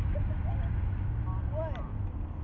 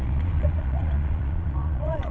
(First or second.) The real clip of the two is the first